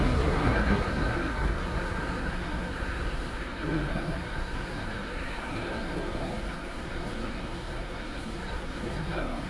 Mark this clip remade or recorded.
remade